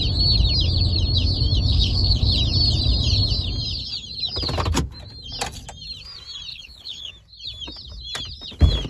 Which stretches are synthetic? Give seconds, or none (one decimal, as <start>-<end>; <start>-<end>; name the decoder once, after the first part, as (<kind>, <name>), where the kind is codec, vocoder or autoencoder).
1.7-2.3 (codec, HILCodec); 6.5-7.1